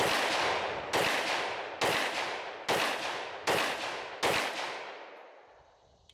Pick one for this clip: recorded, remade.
recorded